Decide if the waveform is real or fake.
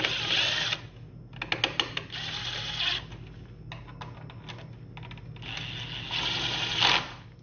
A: real